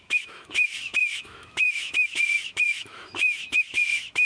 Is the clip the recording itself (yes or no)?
no